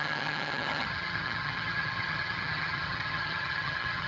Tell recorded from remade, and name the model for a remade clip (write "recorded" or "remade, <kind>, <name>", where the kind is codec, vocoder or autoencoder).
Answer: remade, vocoder, HiFi-GAN